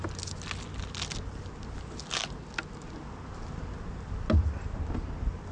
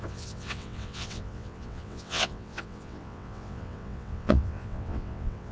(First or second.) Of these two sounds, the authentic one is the first